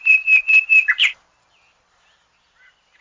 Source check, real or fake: fake